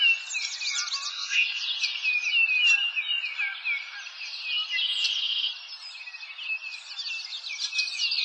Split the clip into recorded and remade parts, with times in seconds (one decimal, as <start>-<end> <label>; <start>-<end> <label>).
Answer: 0.0-1.1 recorded; 1.1-1.6 remade; 1.6-8.2 recorded